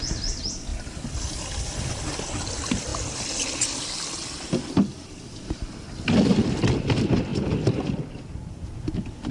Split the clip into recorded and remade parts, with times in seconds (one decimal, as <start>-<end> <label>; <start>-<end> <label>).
0.0-9.3 recorded